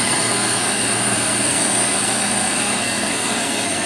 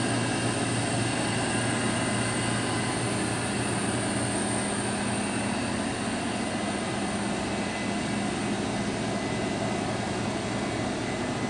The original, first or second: second